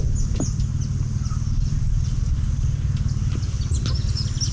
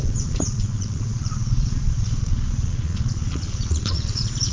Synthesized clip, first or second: second